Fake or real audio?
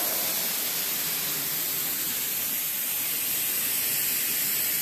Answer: real